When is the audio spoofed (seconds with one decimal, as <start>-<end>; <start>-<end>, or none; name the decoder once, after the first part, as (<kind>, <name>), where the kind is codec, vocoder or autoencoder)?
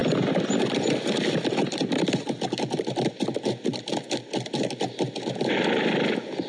none